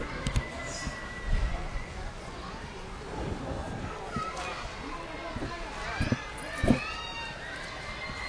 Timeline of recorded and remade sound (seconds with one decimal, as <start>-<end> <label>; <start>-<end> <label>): 0.0-1.5 recorded; 1.5-2.5 remade; 2.5-8.3 recorded